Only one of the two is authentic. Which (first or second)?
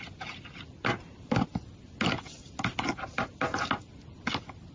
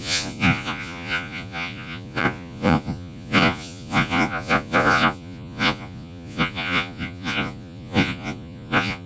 first